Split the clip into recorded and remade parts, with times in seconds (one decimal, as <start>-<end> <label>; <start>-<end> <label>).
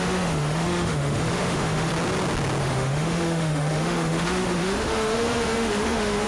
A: 0.0-1.9 remade; 1.9-2.6 recorded; 2.6-6.3 remade